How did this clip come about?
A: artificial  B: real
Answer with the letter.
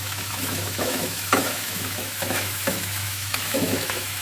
A